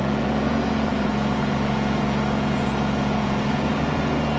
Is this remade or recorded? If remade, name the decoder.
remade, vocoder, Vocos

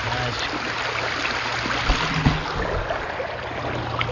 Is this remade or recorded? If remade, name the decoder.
recorded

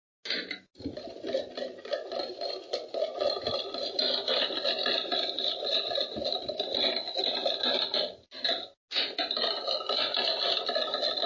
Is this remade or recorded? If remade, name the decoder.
recorded